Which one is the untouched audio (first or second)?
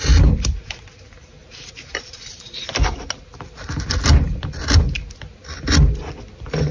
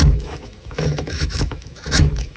first